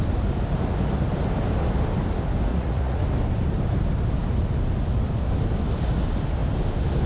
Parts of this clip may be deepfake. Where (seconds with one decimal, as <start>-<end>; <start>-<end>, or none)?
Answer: 2.5-3.0